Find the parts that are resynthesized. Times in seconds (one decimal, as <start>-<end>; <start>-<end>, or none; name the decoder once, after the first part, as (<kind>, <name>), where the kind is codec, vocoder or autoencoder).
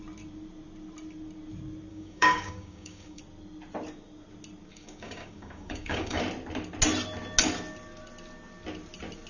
1.9-3.2 (codec, DAC); 4.7-6.2